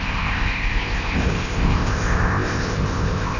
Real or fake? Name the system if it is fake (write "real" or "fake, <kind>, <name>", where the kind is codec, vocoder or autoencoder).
fake, codec, ZipCodec